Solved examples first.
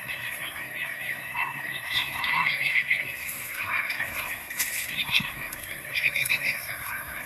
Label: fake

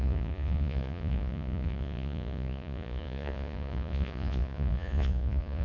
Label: fake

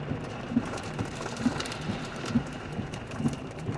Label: fake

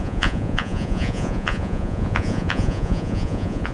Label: fake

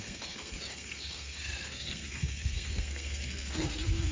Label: fake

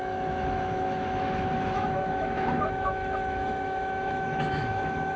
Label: fake